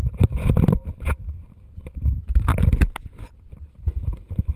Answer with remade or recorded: remade